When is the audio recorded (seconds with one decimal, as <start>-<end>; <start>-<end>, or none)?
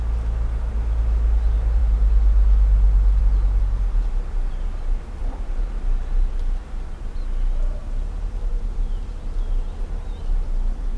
0.0-11.0